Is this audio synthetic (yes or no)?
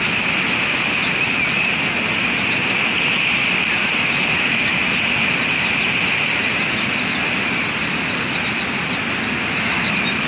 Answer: no